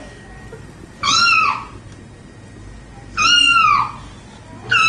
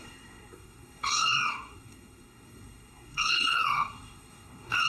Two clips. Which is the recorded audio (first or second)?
first